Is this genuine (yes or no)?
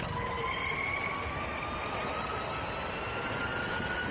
yes